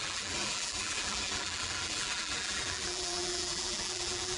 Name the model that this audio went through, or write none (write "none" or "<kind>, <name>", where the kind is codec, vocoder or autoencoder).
vocoder, BigVGAN v2